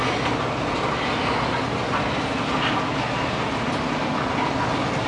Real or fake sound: real